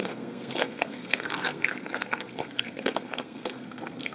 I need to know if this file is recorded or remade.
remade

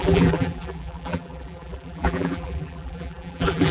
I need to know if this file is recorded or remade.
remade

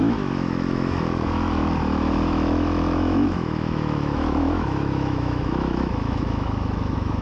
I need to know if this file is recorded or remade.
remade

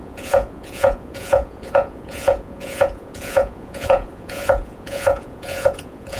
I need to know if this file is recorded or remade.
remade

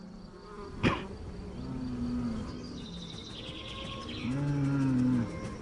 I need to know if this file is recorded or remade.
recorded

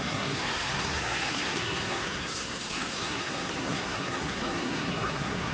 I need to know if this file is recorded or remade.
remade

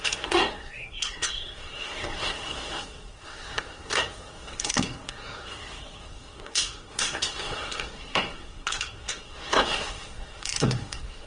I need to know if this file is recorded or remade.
remade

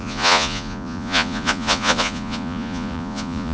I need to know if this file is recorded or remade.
remade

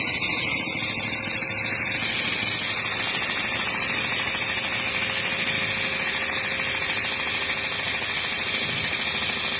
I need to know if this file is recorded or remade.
recorded